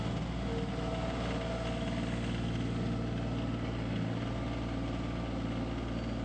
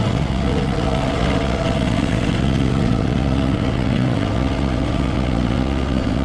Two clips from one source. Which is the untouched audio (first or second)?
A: first